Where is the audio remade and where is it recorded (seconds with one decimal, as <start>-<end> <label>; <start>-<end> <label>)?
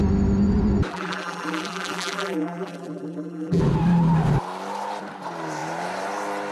0.0-0.9 recorded; 0.9-3.6 remade; 3.6-6.5 recorded